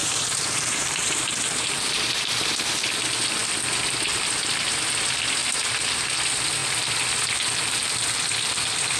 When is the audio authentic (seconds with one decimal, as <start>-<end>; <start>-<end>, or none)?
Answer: 2.9-5.4; 5.9-9.0